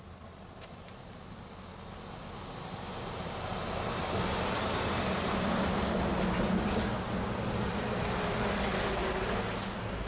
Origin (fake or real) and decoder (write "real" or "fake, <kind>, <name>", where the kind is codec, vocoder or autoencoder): real